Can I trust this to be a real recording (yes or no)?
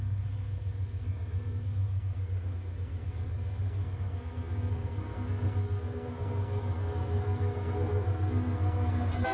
no